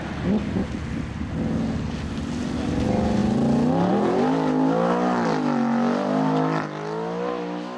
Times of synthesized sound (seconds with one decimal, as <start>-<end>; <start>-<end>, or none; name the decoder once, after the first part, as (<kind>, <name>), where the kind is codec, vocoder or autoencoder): none